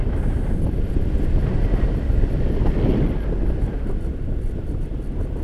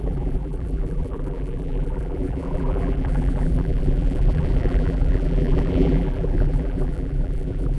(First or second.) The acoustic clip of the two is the first